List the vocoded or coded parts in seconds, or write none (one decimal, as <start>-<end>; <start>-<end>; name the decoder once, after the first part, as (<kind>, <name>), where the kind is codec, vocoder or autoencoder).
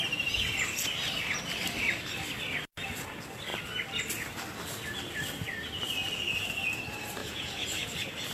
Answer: 7.2-7.9 (vocoder, Vocos)